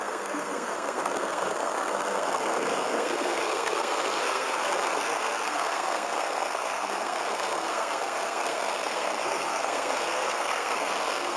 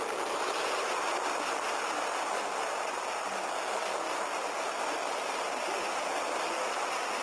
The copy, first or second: first